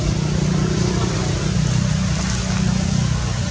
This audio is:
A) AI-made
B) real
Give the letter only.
B